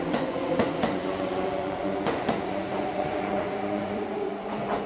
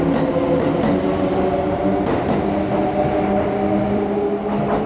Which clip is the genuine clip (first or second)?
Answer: second